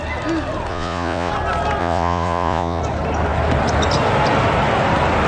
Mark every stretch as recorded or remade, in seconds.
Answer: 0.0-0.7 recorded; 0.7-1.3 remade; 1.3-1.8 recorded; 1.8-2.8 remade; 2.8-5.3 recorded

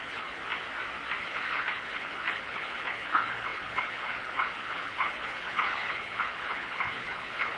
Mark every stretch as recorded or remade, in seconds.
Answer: 0.0-0.4 remade; 0.4-1.2 recorded; 1.2-7.6 remade

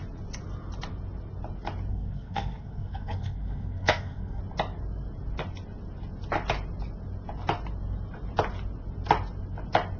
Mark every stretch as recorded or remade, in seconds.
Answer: 0.0-1.9 recorded; 1.9-4.4 remade; 4.4-10.0 recorded

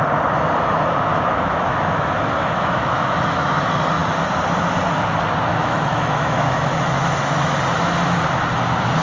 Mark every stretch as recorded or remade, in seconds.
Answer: 0.0-1.1 recorded; 1.1-3.6 remade; 3.6-5.5 recorded; 5.5-7.6 remade; 7.6-9.0 recorded

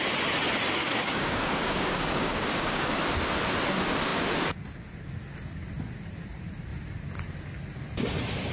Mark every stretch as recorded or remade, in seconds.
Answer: 0.0-0.8 recorded; 0.8-3.0 remade; 3.0-8.5 recorded

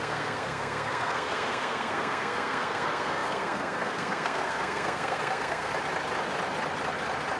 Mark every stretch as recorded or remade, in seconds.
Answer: 0.0-5.7 remade; 5.7-7.4 recorded

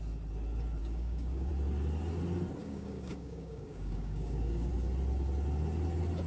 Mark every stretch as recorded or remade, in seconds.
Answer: 0.0-0.8 recorded; 0.8-1.5 remade; 1.5-2.6 recorded; 2.6-4.7 remade; 4.7-6.3 recorded